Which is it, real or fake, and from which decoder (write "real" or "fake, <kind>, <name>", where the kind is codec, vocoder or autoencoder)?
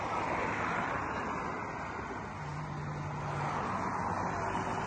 real